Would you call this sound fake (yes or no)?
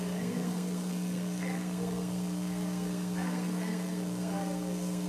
yes